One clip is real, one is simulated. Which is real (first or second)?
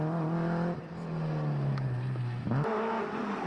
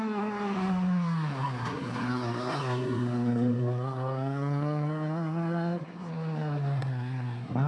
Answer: first